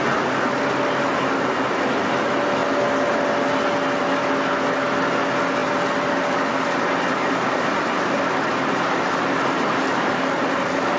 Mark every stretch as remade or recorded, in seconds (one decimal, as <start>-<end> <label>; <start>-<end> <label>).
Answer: 0.0-5.6 recorded; 5.6-9.4 remade; 9.4-11.0 recorded